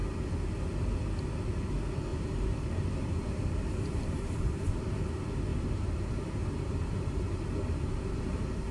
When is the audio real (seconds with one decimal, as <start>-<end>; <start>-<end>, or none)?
0.0-2.1; 4.9-5.5